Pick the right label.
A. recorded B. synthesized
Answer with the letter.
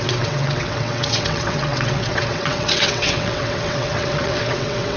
B